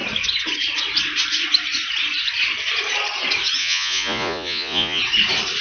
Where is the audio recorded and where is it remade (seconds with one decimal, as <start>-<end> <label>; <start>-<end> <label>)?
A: 0.0-3.6 recorded; 3.6-5.0 remade; 5.0-5.6 recorded